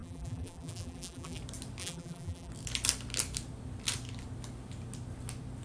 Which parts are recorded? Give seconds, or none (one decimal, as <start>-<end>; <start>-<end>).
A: 1.4-1.8; 2.5-5.6